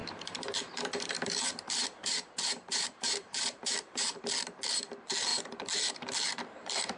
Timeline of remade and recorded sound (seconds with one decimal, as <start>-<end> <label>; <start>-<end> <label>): 0.0-7.0 remade